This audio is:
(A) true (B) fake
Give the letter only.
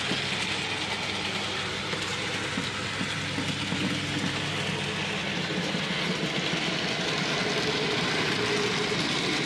A